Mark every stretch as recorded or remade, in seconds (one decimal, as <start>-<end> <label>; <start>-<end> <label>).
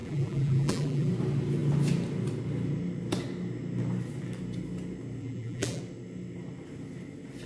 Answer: 0.0-1.1 remade; 1.1-5.2 recorded; 5.2-5.8 remade; 5.8-7.5 recorded